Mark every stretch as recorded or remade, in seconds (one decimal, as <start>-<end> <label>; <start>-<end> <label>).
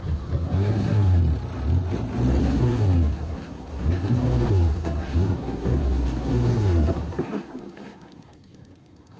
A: 0.0-1.2 remade; 1.2-2.4 recorded; 2.4-9.2 remade